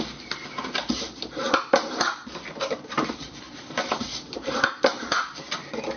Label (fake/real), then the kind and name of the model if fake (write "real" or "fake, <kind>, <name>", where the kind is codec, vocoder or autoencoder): fake, vocoder, BigVGAN v2